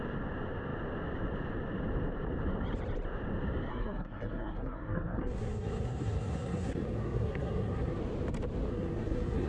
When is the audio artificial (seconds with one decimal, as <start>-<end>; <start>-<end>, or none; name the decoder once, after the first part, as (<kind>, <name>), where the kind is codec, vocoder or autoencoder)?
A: 3.7-8.0 (codec, SNAC); 8.7-9.5